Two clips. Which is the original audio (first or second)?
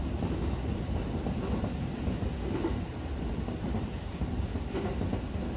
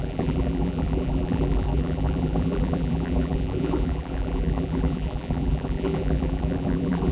first